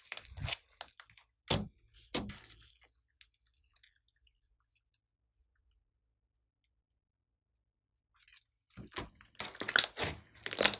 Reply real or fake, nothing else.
real